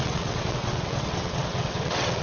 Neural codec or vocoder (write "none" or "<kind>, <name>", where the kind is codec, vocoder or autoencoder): vocoder, WaveNeXt